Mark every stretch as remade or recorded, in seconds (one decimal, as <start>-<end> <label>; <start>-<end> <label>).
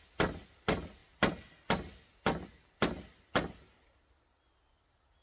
0.0-5.2 recorded